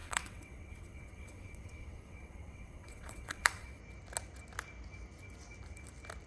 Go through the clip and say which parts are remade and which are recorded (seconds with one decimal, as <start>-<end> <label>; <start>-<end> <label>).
0.0-3.8 remade; 3.8-6.3 recorded

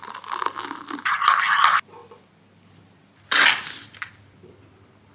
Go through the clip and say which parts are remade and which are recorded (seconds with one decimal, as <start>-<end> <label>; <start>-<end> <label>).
0.0-5.1 recorded

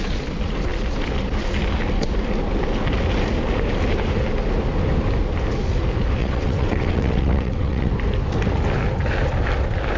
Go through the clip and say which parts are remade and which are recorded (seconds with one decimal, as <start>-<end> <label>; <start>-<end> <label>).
0.0-6.2 recorded; 6.2-7.9 remade; 7.9-10.0 recorded

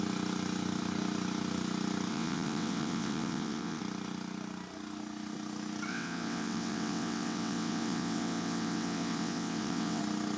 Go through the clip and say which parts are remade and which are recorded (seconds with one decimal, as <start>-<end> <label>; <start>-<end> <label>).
0.0-2.1 recorded; 2.1-3.8 remade; 3.8-5.9 recorded; 5.9-10.0 remade; 10.0-10.4 recorded

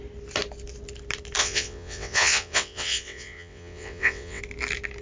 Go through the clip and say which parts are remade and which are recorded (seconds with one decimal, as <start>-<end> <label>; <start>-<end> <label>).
0.0-1.4 recorded; 1.4-4.4 remade; 4.4-5.0 recorded

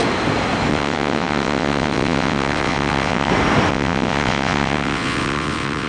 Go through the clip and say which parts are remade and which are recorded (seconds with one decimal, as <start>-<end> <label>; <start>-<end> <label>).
0.0-0.7 recorded; 0.7-3.3 remade; 3.3-3.7 recorded; 3.7-5.9 remade